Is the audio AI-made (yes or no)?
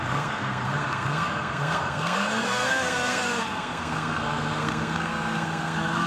yes